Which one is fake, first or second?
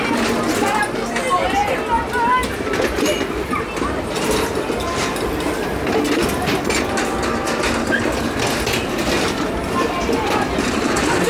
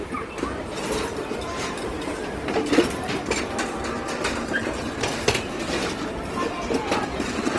second